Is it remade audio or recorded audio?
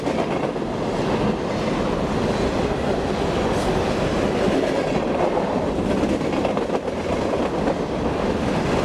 recorded